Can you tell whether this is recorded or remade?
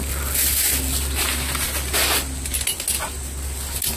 recorded